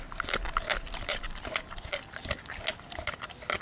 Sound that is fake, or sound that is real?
real